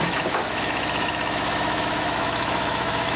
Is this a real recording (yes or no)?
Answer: no